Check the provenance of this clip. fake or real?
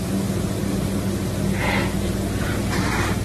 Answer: real